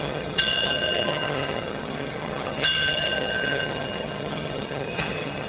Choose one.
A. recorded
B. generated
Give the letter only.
B